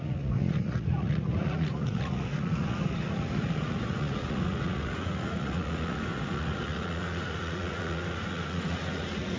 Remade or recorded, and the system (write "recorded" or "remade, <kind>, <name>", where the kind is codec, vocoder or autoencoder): remade, vocoder, Vocos